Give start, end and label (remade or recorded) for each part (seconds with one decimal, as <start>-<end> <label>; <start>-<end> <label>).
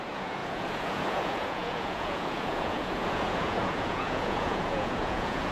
0.0-5.5 remade